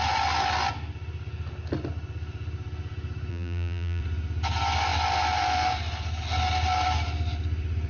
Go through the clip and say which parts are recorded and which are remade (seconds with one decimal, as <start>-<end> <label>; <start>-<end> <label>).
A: 0.0-3.3 recorded; 3.3-4.0 remade; 4.0-7.9 recorded